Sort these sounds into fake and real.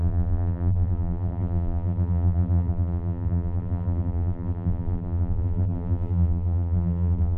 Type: fake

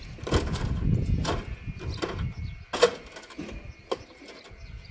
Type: real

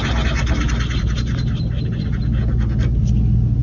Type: real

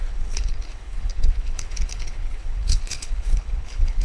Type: fake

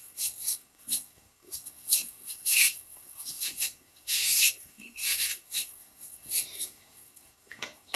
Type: fake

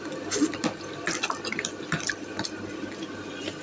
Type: real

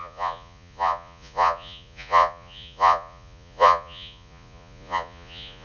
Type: fake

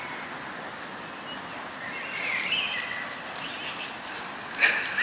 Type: real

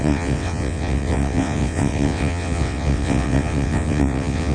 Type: fake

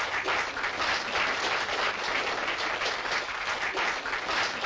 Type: real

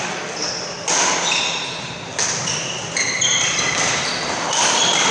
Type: real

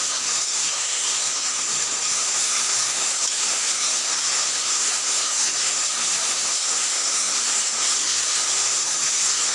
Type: fake